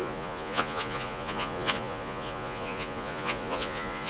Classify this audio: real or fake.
fake